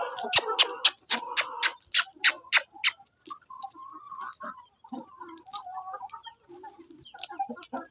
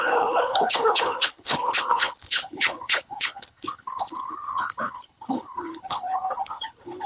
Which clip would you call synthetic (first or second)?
second